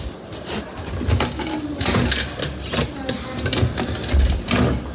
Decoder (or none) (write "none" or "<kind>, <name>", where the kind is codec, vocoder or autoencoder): none